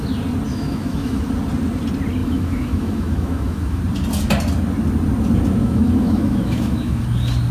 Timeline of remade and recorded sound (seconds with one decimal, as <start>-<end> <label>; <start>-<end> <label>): 0.0-0.5 recorded; 0.5-1.2 remade; 1.2-2.2 recorded; 2.2-3.8 remade; 3.8-5.6 recorded; 5.6-7.0 remade; 7.0-7.5 recorded